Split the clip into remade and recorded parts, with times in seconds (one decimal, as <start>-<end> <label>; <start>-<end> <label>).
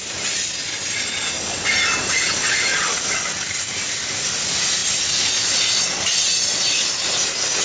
0.0-7.6 recorded